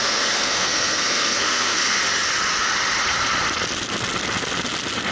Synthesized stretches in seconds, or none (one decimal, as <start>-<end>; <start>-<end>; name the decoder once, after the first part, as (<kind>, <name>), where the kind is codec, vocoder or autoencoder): 0.0-2.0 (codec, SNAC)